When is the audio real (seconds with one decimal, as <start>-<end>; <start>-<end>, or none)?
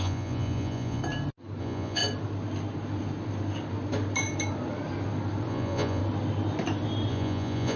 1.0-1.6; 2.0-5.5; 6.0-7.1